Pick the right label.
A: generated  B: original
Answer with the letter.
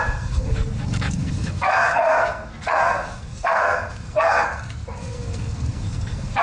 A